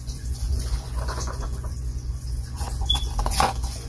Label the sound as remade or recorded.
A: remade